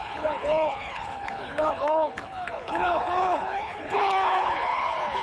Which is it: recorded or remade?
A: remade